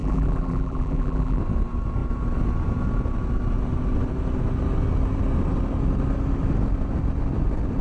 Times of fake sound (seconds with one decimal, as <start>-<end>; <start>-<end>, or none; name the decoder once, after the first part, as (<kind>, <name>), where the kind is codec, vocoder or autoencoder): 0.0-1.4 (vocoder, BigVGAN v2)